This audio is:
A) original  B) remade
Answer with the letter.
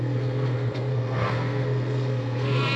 B